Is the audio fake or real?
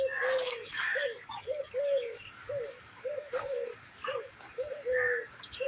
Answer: fake